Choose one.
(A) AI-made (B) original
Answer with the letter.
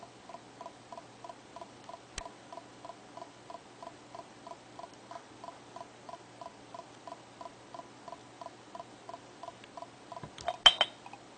B